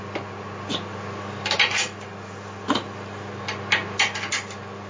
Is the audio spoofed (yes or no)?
no